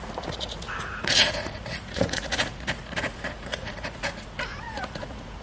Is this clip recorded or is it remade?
remade